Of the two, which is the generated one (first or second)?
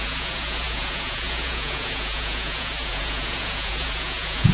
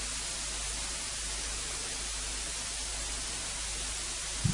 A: first